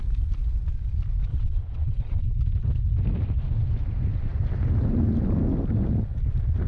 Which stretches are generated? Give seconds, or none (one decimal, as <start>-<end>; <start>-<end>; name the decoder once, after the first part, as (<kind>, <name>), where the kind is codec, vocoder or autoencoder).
1.3-2.3 (vocoder, WaveNeXt)